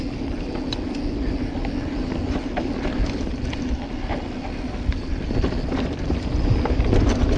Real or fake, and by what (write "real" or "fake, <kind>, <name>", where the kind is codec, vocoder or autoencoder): real